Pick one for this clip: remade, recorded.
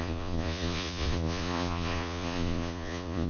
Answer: remade